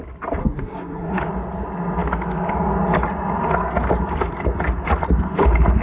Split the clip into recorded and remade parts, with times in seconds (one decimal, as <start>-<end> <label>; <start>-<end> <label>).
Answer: 0.0-0.4 recorded; 0.4-1.2 remade; 1.2-5.8 recorded